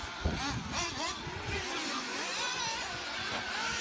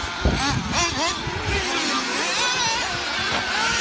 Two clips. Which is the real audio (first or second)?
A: second